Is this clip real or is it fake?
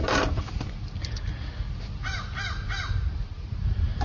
real